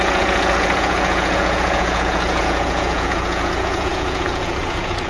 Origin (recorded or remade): remade